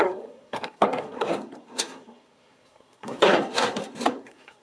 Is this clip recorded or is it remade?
remade